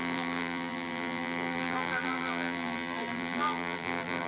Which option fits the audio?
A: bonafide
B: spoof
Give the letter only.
B